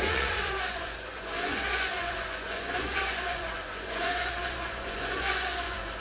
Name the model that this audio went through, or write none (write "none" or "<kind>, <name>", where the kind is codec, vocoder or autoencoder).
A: vocoder, Vocos